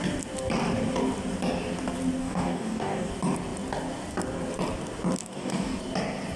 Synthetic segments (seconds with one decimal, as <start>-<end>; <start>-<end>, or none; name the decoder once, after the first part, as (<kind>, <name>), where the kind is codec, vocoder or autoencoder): 2.2-3.1 (codec, DAC); 5.2-5.8